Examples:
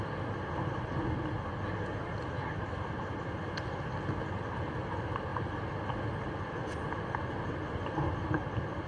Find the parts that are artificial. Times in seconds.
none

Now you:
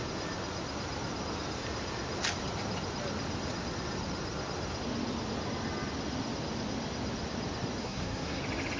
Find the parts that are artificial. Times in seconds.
7.8-8.4

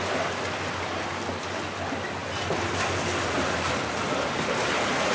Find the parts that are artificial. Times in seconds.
none

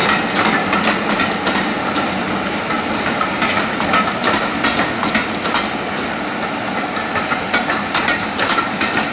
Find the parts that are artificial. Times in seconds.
none

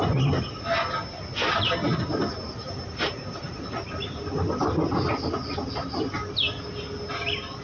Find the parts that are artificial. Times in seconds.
none